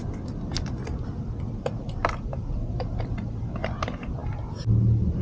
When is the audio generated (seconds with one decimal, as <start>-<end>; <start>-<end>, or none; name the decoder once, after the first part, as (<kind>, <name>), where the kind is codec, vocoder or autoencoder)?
none